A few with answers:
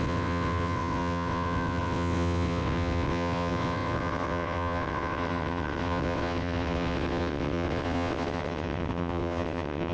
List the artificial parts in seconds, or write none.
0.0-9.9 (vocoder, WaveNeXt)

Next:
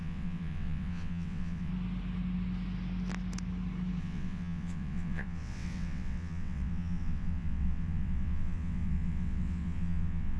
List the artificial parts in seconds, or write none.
0.0-1.7 (vocoder, WaveNeXt); 4.0-10.4

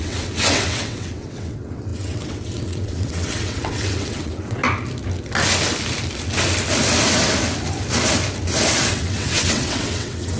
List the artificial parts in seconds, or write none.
0.0-4.6 (vocoder, WaveNeXt); 8.9-10.4

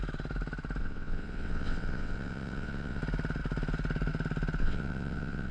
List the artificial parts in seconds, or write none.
0.8-3.0 (vocoder, WaveNeXt); 4.6-5.5

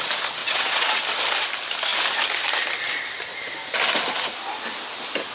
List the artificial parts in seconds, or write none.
0.4-1.0 (vocoder, WaveNeXt)

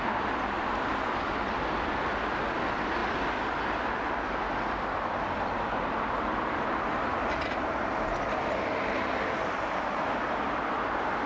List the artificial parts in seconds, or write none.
none

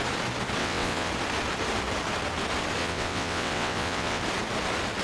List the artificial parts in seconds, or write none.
0.6-1.1 (vocoder, WaveNeXt); 2.8-4.2

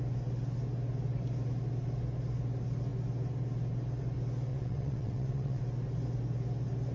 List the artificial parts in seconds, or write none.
4.5-5.6 (vocoder, WaveNeXt)